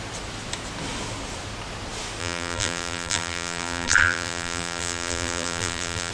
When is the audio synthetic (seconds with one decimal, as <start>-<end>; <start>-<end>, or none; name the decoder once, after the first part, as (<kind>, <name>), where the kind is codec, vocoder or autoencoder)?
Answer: 2.2-6.1 (vocoder, BigVGAN v2)